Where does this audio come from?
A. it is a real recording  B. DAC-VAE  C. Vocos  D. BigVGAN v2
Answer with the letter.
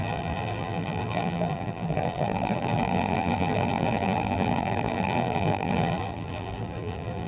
D